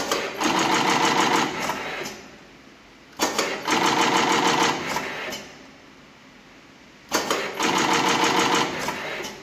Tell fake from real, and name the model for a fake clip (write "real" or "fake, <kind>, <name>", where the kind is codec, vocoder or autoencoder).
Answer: real